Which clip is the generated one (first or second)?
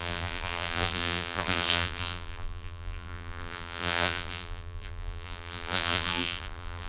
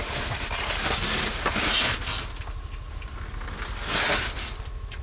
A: first